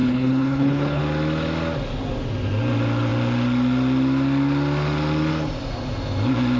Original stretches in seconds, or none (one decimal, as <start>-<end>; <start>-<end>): 1.0-6.6